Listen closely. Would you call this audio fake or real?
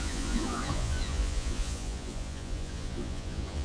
fake